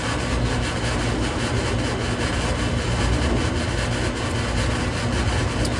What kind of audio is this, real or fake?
real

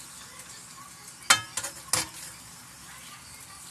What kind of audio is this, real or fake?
real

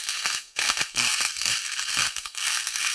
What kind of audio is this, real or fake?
fake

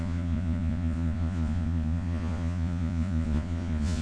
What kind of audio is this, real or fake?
fake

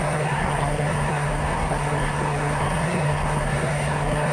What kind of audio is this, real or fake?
fake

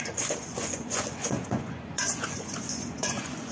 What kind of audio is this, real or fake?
fake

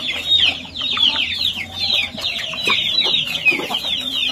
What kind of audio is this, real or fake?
fake